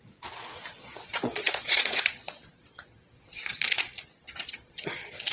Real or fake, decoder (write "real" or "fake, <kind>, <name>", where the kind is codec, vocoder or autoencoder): fake, vocoder, Vocos